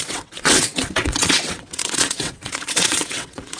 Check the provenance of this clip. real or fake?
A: fake